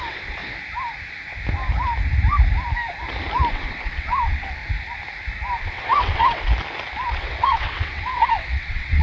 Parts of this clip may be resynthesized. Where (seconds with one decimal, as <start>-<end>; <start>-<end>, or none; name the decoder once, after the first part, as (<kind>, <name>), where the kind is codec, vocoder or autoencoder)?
0.0-0.4 (vocoder, WaveNeXt); 3.5-4.6; 5.6-6.5; 7.1-9.0